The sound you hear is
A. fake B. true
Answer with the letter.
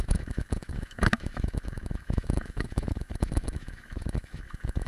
A